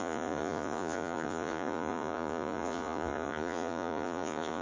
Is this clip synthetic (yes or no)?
yes